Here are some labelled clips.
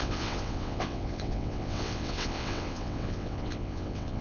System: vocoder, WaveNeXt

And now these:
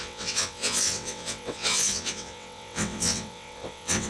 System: vocoder, WaveNeXt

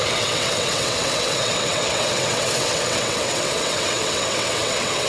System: vocoder, WaveNeXt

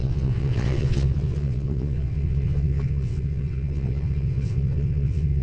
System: vocoder, WaveNeXt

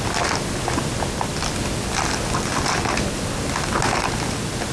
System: none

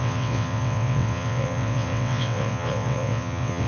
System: vocoder, WaveNeXt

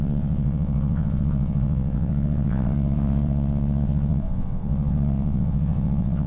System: vocoder, WaveNeXt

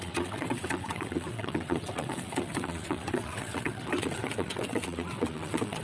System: vocoder, WaveNeXt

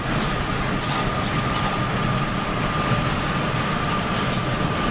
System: none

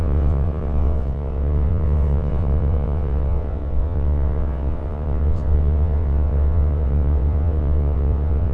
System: vocoder, WaveNeXt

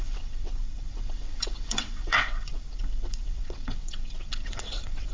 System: vocoder, WaveNeXt